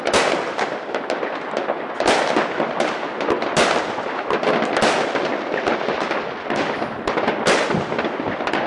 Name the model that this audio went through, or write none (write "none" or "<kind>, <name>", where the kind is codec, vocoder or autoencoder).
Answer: none